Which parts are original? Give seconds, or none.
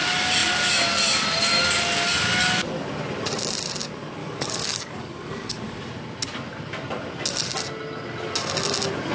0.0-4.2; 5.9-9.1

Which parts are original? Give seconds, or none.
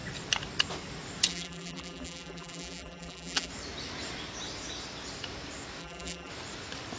0.0-1.3; 3.5-5.8; 6.3-7.0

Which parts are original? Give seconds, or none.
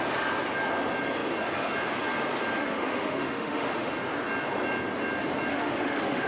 0.0-2.6; 3.9-5.5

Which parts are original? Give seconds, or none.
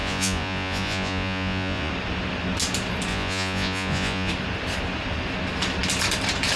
1.9-3.1; 4.3-6.6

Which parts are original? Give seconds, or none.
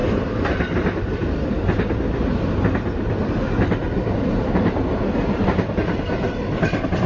0.0-7.1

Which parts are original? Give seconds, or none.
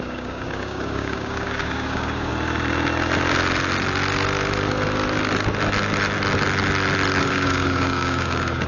2.3-7.2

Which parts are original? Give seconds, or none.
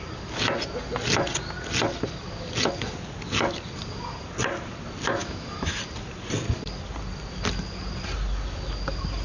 0.0-5.2; 5.8-9.2